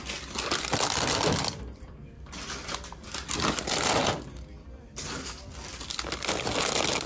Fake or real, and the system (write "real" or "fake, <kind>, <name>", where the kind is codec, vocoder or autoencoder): real